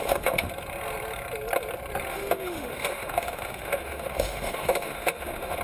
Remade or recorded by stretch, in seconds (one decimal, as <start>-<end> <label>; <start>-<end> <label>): 0.0-0.5 remade; 0.5-2.1 recorded; 2.1-5.6 remade